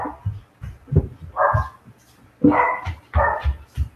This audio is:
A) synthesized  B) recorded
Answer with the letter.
B